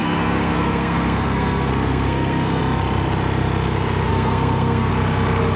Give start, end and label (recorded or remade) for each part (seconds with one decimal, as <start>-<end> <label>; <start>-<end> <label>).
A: 0.0-2.6 remade; 2.6-4.1 recorded; 4.1-4.9 remade; 4.9-5.6 recorded